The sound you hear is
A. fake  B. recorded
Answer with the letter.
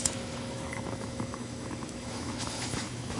A